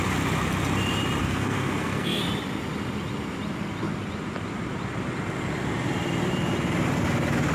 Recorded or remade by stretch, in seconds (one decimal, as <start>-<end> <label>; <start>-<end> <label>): 0.0-1.2 recorded; 1.2-2.2 remade; 2.2-7.5 recorded